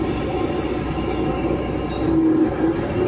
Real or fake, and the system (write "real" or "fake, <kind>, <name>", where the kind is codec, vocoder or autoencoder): real